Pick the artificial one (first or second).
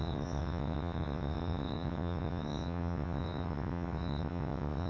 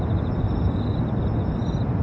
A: first